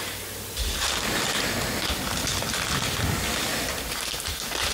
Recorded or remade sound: remade